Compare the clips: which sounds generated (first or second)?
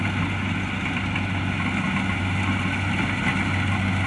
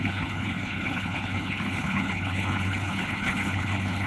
second